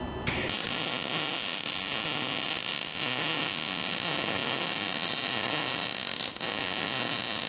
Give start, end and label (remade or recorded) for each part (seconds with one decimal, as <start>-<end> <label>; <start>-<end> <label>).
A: 0.0-4.4 recorded; 4.4-5.3 remade; 5.3-7.5 recorded